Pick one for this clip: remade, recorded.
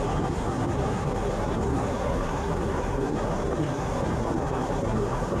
remade